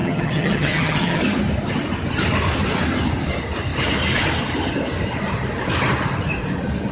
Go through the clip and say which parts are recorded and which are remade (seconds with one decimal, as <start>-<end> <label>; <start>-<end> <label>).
0.0-1.2 remade; 1.2-6.9 recorded